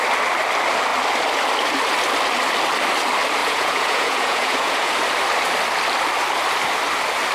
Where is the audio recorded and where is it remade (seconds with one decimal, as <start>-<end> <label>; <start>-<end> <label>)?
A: 0.0-3.4 recorded; 3.4-4.9 remade; 4.9-7.3 recorded